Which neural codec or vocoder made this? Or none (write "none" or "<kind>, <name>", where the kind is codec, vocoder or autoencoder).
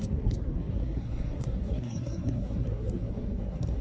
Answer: codec, SNAC